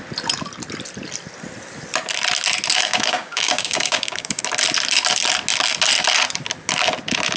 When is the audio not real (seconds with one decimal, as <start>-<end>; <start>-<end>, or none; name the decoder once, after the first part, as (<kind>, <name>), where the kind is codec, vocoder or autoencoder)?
2.8-4.4 (codec, DAC)